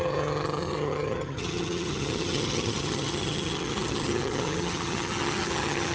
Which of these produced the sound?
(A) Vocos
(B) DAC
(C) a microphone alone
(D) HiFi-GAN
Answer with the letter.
D